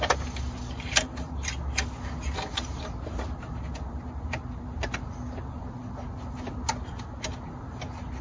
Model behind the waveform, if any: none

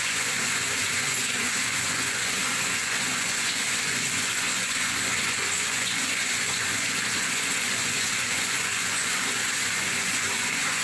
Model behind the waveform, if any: vocoder, Vocos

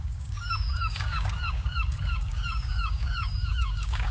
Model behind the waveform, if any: codec, DAC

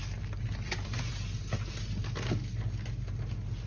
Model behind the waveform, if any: none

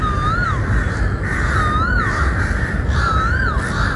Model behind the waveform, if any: none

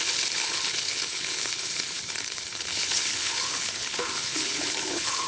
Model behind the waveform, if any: codec, HILCodec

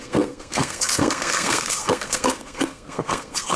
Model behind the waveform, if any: codec, SNAC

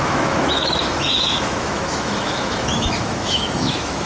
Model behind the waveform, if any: autoencoder, DAC-VAE